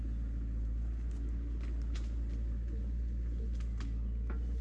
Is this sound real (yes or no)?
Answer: yes